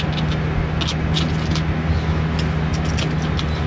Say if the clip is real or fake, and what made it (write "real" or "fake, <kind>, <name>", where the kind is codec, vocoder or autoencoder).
real